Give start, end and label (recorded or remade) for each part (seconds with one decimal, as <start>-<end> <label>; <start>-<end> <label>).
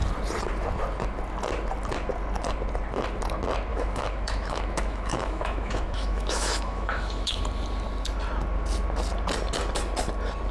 0.0-3.7 recorded; 3.7-7.4 remade; 7.4-10.5 recorded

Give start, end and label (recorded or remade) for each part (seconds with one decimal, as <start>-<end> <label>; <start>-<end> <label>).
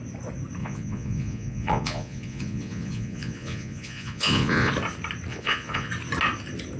0.0-0.6 recorded; 0.6-4.7 remade; 4.7-5.3 recorded; 5.3-5.9 remade; 5.9-6.8 recorded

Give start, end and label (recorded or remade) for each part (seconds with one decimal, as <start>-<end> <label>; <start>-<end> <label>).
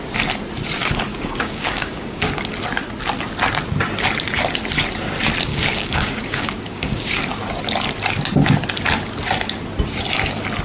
0.0-1.1 recorded; 1.1-2.3 remade; 2.3-5.5 recorded; 5.5-7.2 remade; 7.2-10.6 recorded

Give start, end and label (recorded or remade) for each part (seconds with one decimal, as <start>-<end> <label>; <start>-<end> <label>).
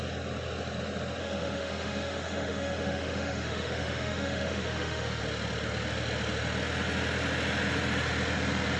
0.0-1.2 recorded; 1.2-5.2 remade; 5.2-8.8 recorded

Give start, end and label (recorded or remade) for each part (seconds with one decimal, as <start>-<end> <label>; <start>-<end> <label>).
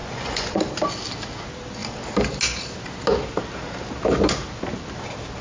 0.0-0.6 remade; 0.6-5.4 recorded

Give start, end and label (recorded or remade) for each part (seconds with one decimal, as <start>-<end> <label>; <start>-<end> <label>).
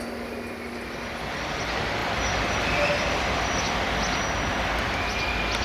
0.0-2.0 recorded; 2.0-3.6 remade; 3.6-5.6 recorded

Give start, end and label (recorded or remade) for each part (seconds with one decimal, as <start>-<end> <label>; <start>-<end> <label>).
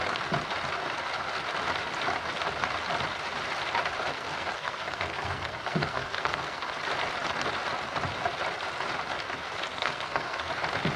0.0-4.1 recorded; 4.1-6.7 remade; 6.7-9.7 recorded; 9.7-10.5 remade; 10.5-11.0 recorded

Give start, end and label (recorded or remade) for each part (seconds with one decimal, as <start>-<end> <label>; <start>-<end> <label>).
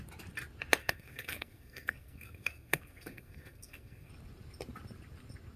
0.0-0.8 recorded; 0.8-4.1 remade; 4.1-5.6 recorded